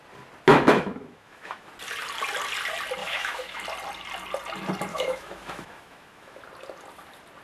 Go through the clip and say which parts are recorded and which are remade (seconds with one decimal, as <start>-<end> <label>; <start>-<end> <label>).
0.0-0.5 recorded; 0.5-1.7 remade; 1.7-3.0 recorded; 3.0-3.6 remade; 3.6-4.9 recorded; 4.9-6.4 remade; 6.4-7.4 recorded